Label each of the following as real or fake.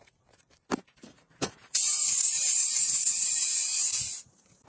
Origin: fake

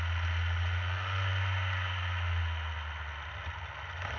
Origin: real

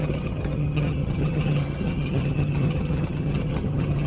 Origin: fake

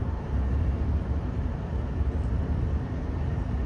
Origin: fake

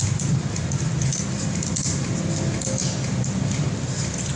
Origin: fake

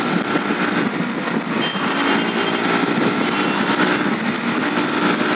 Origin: real